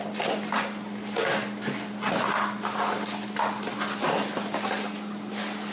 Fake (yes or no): no